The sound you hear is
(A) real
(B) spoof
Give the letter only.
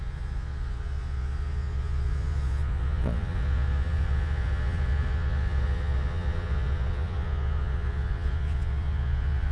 B